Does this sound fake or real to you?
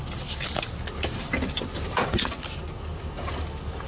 real